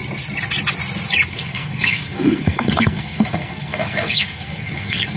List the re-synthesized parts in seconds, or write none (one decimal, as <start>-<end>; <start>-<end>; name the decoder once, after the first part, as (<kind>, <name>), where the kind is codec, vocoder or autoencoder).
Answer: 1.3-5.2 (codec, SNAC)